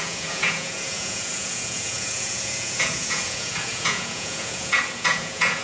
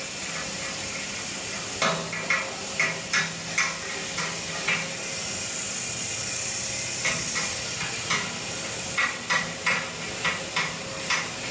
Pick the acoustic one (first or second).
second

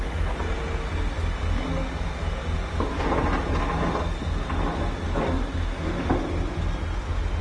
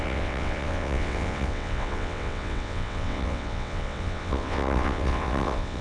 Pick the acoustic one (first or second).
first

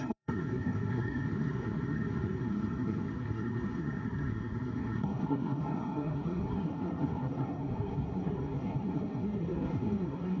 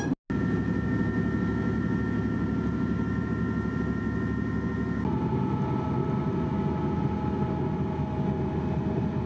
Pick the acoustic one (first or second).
second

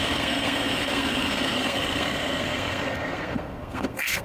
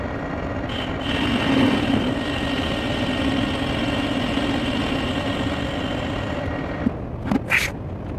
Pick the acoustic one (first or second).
second